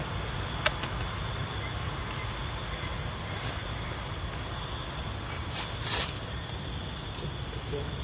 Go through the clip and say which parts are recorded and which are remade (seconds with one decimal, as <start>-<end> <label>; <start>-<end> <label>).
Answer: 0.0-8.0 recorded